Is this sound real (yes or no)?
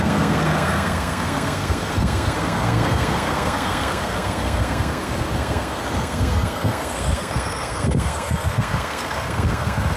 no